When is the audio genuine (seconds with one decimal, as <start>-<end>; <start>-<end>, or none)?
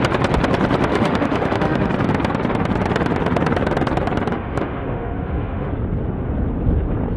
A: 0.0-0.9; 1.9-4.3; 5.7-7.2